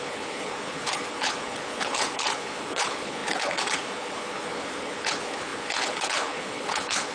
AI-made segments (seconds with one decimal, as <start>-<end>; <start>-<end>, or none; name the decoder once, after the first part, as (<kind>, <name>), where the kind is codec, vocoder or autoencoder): 0.0-7.1 (codec, HILCodec)